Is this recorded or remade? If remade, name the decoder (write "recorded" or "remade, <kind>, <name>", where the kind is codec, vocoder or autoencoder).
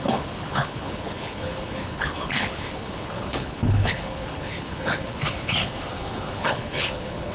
remade, codec, HILCodec